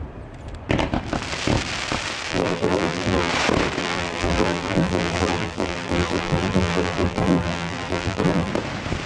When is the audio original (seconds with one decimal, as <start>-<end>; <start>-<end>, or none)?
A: 0.0-2.3; 3.3-3.8; 8.5-9.1

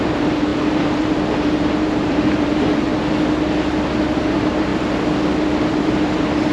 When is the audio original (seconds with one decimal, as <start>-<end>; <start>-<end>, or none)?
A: 2.9-4.2; 4.7-5.7

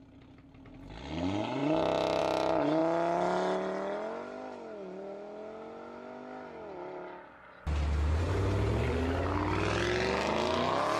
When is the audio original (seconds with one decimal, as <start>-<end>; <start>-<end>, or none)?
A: 0.0-11.0

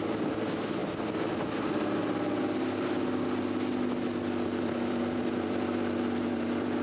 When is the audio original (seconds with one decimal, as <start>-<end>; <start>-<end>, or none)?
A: 0.8-4.6

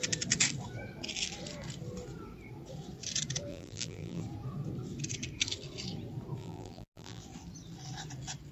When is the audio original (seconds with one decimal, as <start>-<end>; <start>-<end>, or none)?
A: 0.0-3.5; 4.2-6.4; 7.2-8.5

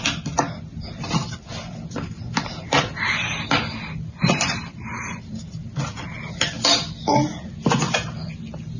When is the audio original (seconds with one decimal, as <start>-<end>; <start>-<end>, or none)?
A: 0.0-4.2; 5.5-8.8